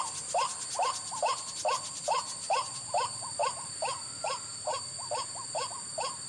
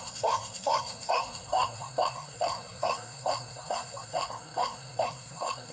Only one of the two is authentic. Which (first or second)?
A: first